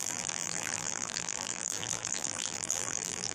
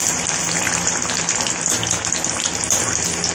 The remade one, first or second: first